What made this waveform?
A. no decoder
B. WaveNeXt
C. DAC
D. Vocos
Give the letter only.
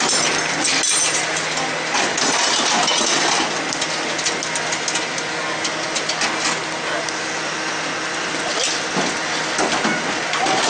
A